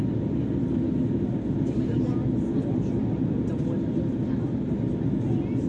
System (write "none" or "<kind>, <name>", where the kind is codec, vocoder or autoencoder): none